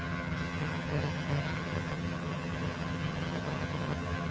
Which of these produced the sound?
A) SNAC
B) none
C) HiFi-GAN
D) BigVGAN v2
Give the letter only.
C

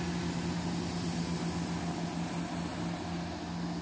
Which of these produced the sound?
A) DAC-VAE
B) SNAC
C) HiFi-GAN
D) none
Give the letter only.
D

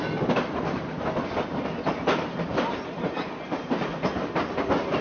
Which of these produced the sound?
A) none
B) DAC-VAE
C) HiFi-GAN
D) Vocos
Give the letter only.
A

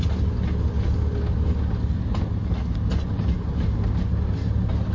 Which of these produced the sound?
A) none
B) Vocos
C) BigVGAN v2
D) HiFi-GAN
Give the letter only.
A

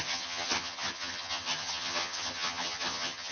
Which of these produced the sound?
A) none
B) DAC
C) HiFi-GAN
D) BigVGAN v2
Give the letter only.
C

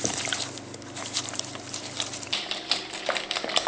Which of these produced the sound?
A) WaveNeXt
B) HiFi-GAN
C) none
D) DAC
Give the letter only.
C